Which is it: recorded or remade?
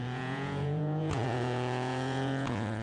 remade